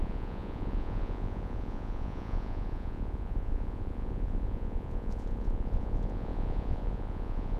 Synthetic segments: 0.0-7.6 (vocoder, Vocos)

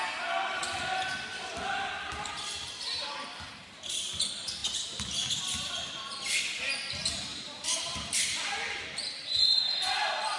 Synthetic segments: 7.3-9.8 (vocoder, BigVGAN v2)